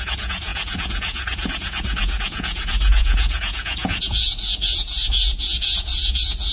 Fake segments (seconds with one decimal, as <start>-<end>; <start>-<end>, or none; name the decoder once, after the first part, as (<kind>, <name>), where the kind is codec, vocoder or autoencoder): 0.0-6.5 (vocoder, Vocos)